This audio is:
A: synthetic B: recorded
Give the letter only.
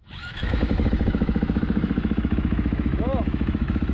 A